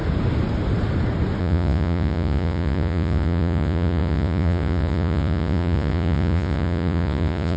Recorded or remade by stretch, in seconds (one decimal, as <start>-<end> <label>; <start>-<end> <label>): 0.0-1.4 recorded; 1.4-7.6 remade